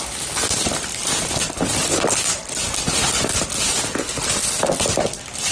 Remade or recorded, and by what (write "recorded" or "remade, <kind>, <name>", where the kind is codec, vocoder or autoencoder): recorded